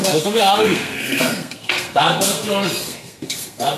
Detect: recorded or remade remade